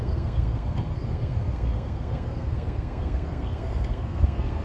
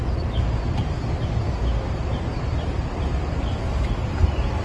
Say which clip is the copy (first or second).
first